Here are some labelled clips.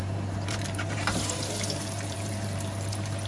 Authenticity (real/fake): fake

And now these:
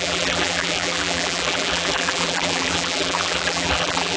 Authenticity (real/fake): fake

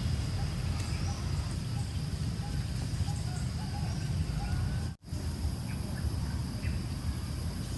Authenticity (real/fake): real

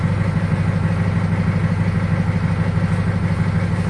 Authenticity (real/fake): real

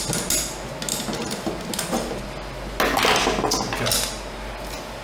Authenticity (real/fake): real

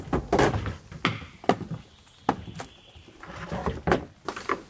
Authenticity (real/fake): real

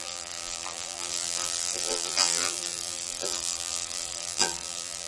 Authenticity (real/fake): fake